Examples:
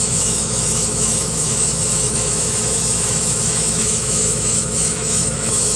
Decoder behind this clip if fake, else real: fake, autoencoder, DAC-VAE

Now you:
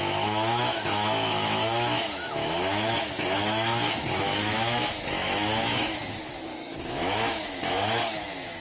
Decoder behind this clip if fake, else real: fake, autoencoder, DAC-VAE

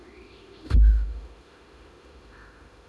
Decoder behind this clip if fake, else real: fake, autoencoder, DAC-VAE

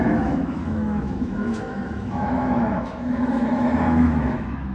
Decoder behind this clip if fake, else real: fake, autoencoder, DAC-VAE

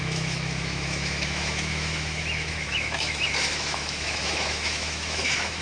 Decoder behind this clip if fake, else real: fake, autoencoder, DAC-VAE